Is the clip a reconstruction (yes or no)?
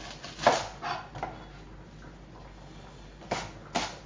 no